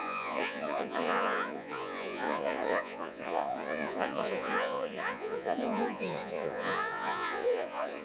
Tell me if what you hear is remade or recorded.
remade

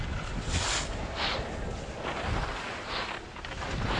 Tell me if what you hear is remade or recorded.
recorded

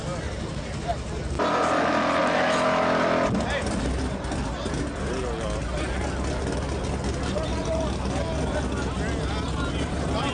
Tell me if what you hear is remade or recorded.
recorded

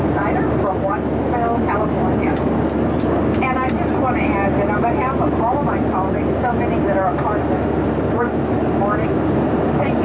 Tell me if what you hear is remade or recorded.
recorded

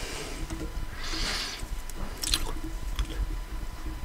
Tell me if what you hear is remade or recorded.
recorded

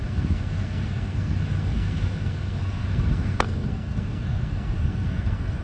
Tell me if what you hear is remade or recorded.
remade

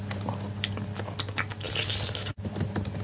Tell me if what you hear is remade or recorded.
recorded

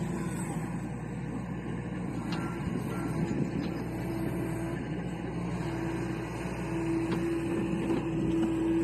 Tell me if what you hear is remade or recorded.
recorded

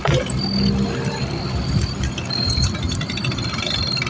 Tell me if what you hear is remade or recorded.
recorded